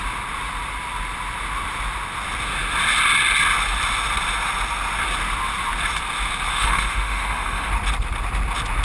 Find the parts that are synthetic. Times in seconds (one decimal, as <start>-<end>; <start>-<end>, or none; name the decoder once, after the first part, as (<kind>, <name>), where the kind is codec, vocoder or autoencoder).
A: 6.5-7.7 (autoencoder, DAC-VAE)